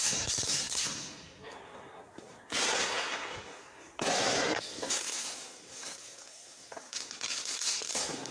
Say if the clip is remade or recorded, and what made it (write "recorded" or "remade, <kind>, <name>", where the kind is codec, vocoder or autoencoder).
remade, codec, SNAC